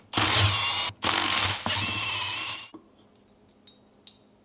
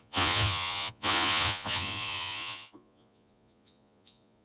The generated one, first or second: second